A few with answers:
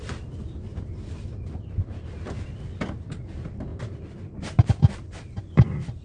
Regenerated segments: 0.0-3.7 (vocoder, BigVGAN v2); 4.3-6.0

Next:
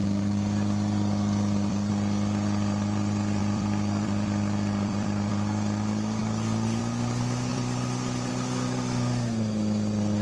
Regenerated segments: 0.0-1.9 (vocoder, BigVGAN v2); 3.4-5.3; 7.5-8.3

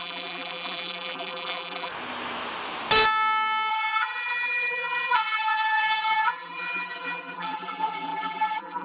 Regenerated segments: 0.0-1.9 (vocoder, BigVGAN v2); 3.7-8.8

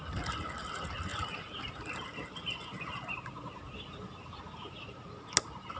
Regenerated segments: 1.1-1.8 (vocoder, BigVGAN v2)

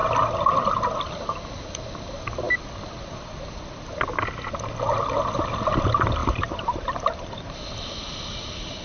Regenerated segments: 6.2-8.8 (vocoder, BigVGAN v2)

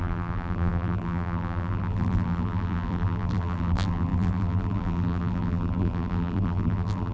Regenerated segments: 0.0-7.1 (vocoder, BigVGAN v2)

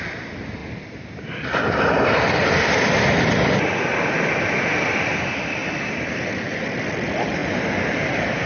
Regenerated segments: 0.6-5.3 (vocoder, BigVGAN v2)